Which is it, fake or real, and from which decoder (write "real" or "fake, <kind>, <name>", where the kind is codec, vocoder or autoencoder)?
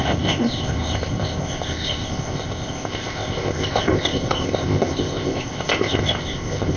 fake, codec, ZipCodec